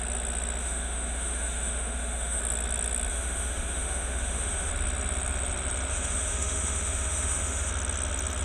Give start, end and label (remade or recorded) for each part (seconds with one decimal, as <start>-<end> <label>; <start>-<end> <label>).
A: 0.0-0.6 recorded; 0.6-2.4 remade; 2.4-3.1 recorded; 3.1-4.7 remade; 4.7-5.9 recorded; 5.9-7.7 remade; 7.7-8.4 recorded